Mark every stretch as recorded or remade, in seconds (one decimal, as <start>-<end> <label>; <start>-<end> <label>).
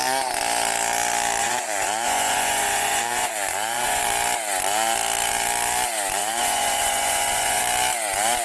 0.0-1.4 recorded; 1.4-4.0 remade; 4.0-6.2 recorded; 6.2-7.6 remade; 7.6-8.4 recorded